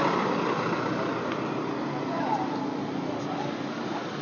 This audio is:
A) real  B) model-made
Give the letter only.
A